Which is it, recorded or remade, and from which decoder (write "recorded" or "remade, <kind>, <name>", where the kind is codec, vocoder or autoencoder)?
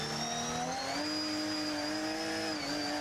recorded